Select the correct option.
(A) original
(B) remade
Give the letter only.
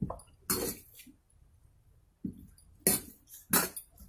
A